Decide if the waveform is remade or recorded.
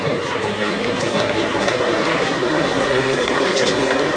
remade